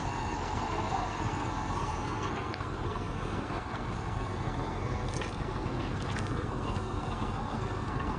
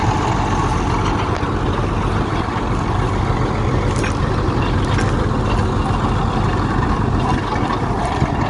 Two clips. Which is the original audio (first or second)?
second